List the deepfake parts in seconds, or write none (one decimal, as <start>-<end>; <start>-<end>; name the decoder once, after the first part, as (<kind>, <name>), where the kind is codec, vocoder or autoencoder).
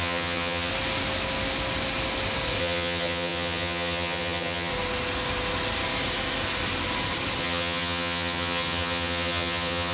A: 0.0-0.7 (vocoder, HiFi-GAN); 2.6-4.7; 7.4-9.9